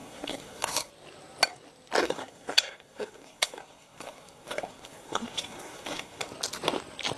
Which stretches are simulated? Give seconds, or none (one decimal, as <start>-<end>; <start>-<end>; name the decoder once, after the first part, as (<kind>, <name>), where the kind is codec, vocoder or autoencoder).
0.0-0.9 (codec, SNAC); 2.0-6.3